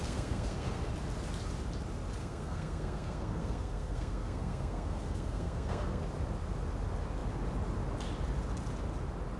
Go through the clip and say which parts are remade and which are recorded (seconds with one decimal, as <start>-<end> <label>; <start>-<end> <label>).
0.0-0.9 remade; 0.9-2.2 recorded; 2.2-6.0 remade; 6.0-9.4 recorded